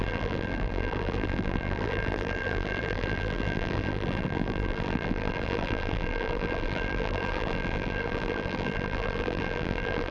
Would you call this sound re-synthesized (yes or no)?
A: yes